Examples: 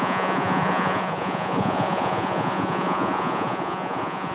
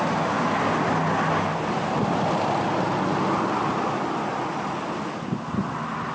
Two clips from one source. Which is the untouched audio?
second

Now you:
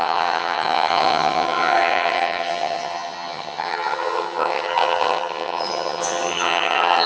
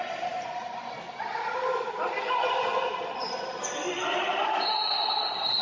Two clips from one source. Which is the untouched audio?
second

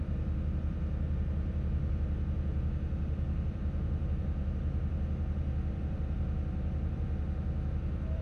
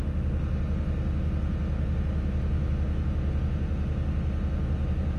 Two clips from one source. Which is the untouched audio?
second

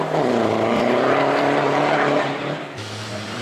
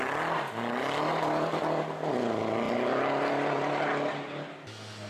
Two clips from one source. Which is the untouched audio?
second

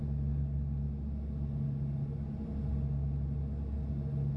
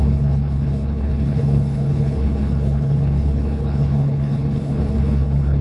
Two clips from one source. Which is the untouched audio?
first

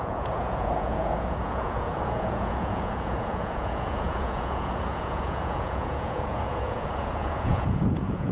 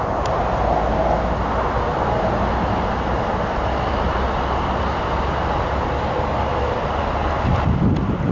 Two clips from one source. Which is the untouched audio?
second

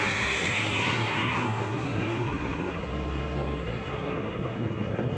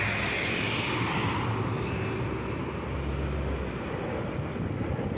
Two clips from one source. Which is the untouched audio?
second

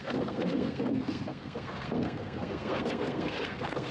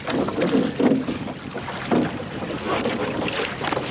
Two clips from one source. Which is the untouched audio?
second